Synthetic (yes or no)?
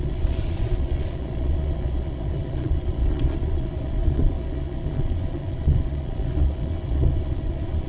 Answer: yes